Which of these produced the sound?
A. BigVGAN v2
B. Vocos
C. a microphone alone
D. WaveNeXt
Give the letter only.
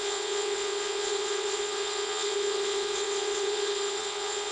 D